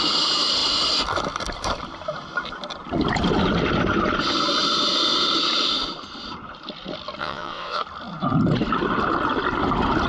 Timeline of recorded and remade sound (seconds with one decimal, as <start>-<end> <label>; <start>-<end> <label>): 0.0-7.2 recorded; 7.2-7.8 remade; 7.8-10.1 recorded